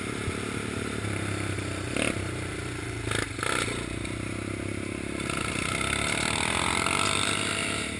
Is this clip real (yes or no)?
yes